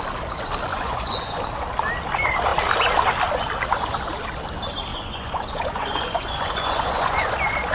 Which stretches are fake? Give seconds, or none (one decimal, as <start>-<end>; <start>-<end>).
0.7-1.4; 4.9-7.3